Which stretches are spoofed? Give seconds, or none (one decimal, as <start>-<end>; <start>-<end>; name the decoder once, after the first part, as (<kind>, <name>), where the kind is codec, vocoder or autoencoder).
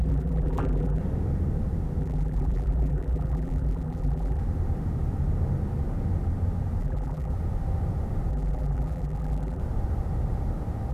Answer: 0.0-1.0 (vocoder, BigVGAN v2); 2.0-4.4; 6.8-7.3; 8.3-9.6